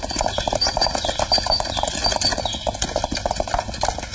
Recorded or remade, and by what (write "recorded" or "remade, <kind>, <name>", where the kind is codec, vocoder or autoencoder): recorded